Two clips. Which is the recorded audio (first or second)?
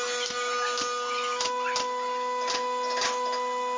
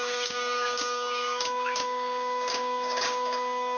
first